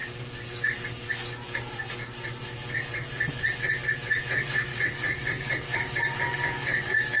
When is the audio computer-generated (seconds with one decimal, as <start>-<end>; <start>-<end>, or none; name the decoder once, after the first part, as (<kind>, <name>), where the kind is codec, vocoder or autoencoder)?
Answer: 4.7-7.2 (codec, DAC)